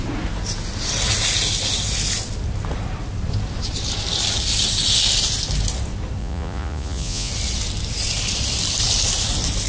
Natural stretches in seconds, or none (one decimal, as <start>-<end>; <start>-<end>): 0.0-6.2; 7.3-9.7